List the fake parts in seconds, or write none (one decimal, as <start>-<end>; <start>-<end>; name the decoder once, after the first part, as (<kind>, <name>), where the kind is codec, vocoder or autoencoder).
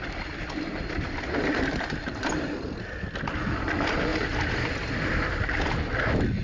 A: 0.0-3.1 (vocoder, BigVGAN v2)